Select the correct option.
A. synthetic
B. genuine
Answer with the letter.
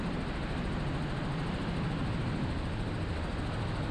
B